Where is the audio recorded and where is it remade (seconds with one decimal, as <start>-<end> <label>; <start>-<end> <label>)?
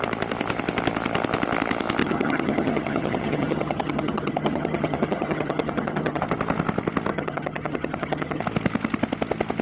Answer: 0.0-2.0 recorded; 2.0-6.2 remade; 6.2-7.1 recorded; 7.1-8.4 remade; 8.4-9.6 recorded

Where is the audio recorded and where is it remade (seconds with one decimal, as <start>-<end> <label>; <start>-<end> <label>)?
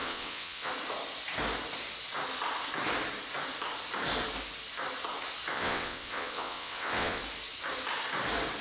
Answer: 0.0-0.7 remade; 0.7-5.5 recorded; 5.5-7.2 remade; 7.2-8.6 recorded